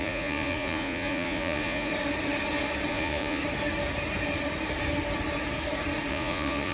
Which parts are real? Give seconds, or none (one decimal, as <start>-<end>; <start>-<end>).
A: 1.9-2.9; 3.4-6.1